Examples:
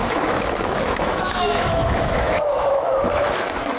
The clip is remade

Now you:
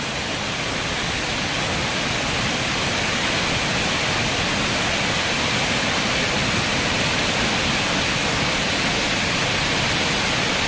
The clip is recorded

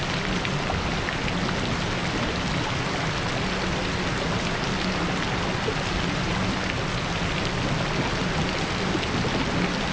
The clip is recorded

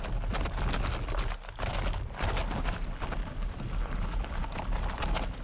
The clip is recorded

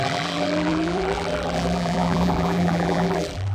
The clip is remade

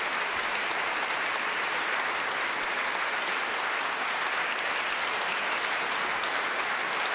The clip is recorded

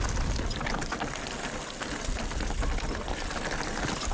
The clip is recorded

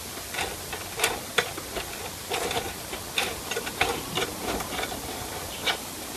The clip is recorded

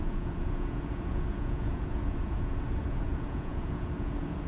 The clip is remade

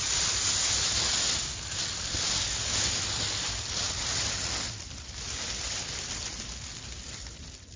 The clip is remade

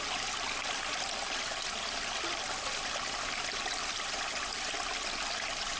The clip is recorded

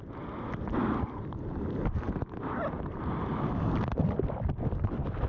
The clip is recorded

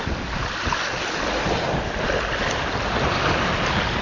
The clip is recorded